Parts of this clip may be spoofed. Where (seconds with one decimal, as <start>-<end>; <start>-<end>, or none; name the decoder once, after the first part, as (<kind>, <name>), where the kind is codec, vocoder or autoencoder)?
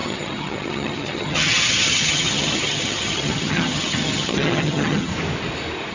0.0-5.1 (vocoder, HiFi-GAN)